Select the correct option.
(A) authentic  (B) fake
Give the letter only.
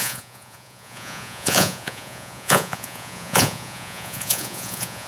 B